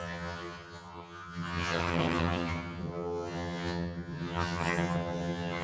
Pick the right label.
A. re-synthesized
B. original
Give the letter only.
A